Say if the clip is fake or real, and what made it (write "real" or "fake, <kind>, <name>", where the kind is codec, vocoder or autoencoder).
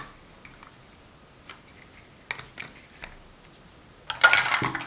real